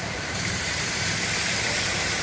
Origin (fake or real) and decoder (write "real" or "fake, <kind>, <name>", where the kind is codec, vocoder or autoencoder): fake, vocoder, BigVGAN v2